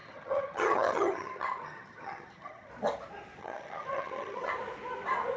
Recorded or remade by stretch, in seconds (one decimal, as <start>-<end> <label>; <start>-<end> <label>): 0.0-2.7 remade; 2.7-3.4 recorded; 3.4-4.5 remade; 4.5-5.4 recorded